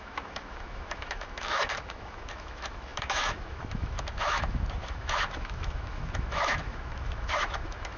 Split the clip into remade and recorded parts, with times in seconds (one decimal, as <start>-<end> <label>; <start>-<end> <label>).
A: 0.0-8.0 remade